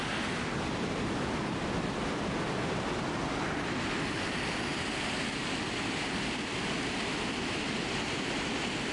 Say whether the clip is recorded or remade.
recorded